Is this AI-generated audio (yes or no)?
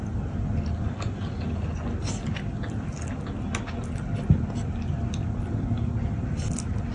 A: no